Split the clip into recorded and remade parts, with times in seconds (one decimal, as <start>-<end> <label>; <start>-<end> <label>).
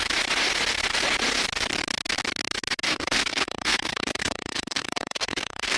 0.0-2.9 recorded; 2.9-5.8 remade